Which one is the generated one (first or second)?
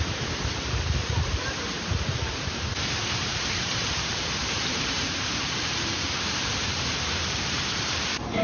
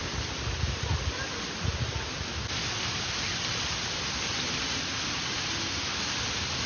first